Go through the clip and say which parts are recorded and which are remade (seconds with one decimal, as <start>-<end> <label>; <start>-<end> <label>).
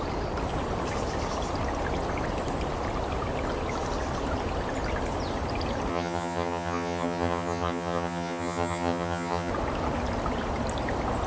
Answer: 0.0-5.9 recorded; 5.9-9.5 remade; 9.5-11.3 recorded